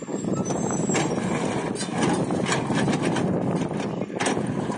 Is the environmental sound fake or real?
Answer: real